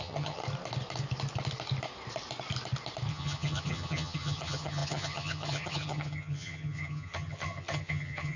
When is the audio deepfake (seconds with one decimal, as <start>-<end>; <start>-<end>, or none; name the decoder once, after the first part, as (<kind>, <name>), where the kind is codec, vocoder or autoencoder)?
0.0-0.4 (vocoder, HiFi-GAN); 3.1-8.4